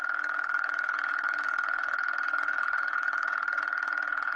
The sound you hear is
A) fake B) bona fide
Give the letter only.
A